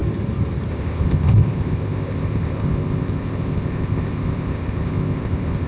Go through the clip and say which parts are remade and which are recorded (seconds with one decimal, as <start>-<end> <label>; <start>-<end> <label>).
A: 0.0-0.7 recorded; 0.7-5.7 remade